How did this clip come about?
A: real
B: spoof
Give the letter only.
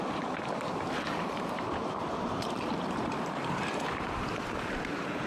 B